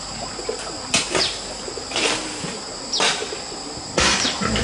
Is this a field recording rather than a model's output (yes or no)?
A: yes